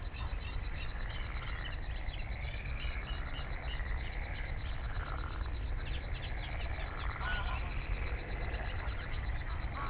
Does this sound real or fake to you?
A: real